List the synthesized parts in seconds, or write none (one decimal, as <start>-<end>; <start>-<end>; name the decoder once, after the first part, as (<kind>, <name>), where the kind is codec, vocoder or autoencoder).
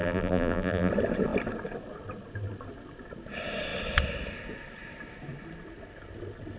0.0-0.9 (vocoder, BigVGAN v2)